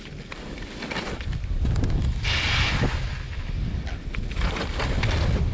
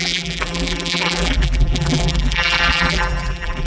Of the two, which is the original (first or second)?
first